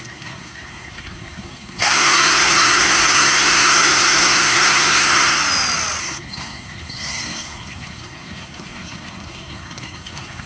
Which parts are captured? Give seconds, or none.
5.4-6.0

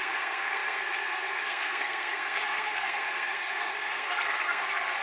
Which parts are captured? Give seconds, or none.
none

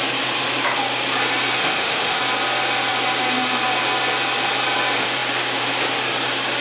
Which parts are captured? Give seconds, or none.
0.0-1.6; 2.2-6.6

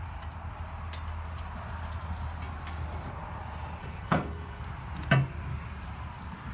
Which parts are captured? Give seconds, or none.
0.0-3.8; 4.6-6.5

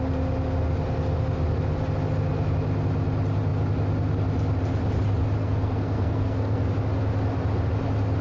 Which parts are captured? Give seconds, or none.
0.0-5.4; 6.7-8.2